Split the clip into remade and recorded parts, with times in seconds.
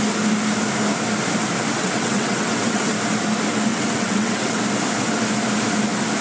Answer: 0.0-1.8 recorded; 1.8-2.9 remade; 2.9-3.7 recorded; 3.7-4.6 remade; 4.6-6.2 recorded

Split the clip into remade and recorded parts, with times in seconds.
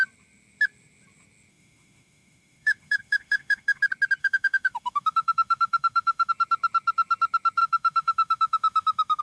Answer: 0.0-1.5 recorded; 1.5-3.8 remade; 3.8-4.2 recorded; 4.2-6.3 remade; 6.3-7.6 recorded; 7.6-9.2 remade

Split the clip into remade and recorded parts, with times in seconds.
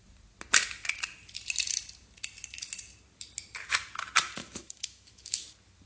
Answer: 0.0-4.4 recorded; 4.4-5.4 remade; 5.4-5.9 recorded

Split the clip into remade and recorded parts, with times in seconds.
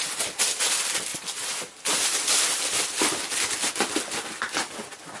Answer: 0.0-1.1 recorded; 1.1-2.6 remade; 2.6-5.2 recorded